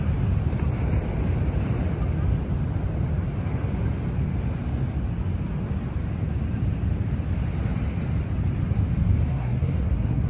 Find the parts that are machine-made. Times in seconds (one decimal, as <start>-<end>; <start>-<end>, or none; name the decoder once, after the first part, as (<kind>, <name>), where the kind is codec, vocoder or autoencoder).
9.3-10.3 (codec, SNAC)